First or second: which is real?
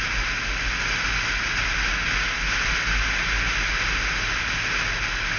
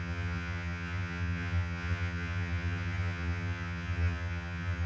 first